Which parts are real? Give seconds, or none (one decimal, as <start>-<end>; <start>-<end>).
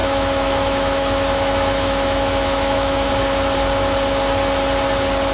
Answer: 3.1-5.3